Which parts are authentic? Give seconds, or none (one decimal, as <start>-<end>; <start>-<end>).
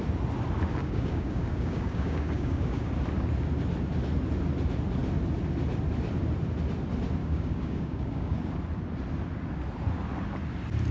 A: 0.0-0.8; 2.9-7.2; 8.5-10.9